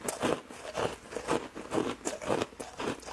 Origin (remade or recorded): recorded